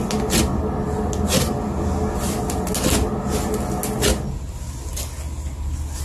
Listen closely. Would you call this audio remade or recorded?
recorded